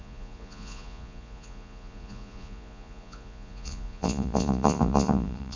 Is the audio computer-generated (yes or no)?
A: yes